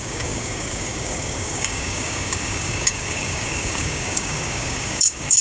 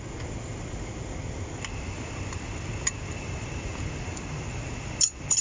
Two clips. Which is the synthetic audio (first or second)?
first